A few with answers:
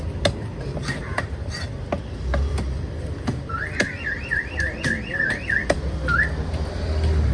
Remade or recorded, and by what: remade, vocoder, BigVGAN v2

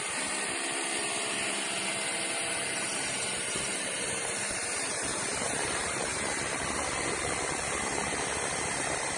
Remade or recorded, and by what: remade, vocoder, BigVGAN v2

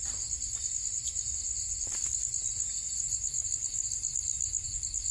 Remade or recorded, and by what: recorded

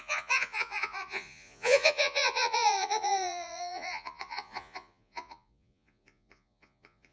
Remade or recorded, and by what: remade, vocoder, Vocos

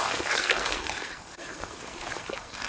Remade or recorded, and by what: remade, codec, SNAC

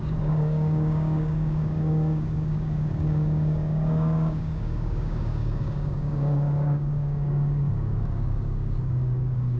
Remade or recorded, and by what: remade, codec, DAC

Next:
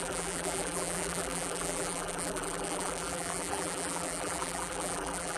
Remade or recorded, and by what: remade, vocoder, BigVGAN v2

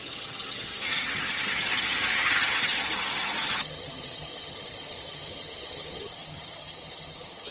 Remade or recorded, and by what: remade, vocoder, HiFi-GAN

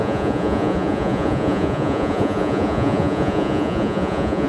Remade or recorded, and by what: remade, vocoder, Vocos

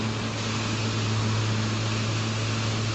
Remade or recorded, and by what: recorded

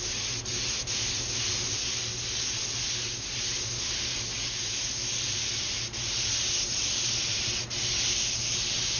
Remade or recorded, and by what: recorded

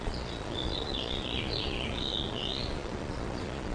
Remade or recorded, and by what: remade, vocoder, Vocos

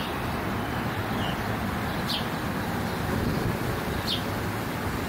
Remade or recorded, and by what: recorded